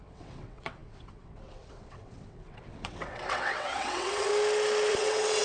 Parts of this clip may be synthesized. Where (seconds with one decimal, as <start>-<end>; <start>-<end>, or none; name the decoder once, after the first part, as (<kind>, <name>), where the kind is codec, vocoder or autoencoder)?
0.0-4.3 (vocoder, WaveNeXt); 4.9-5.4